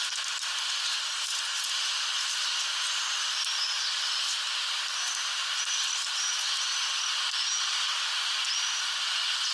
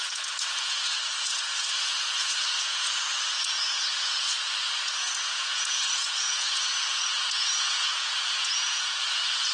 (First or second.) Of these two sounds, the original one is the first